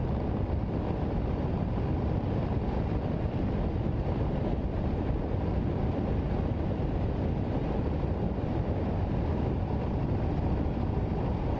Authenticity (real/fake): real